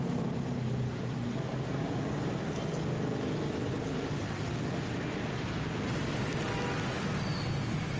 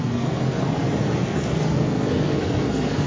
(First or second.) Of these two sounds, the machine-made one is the second